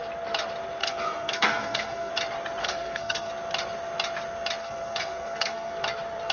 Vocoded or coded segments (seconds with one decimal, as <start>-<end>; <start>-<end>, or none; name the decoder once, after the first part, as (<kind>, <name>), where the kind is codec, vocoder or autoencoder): 0.8-2.1 (codec, SNAC); 2.6-3.3; 4.6-5.7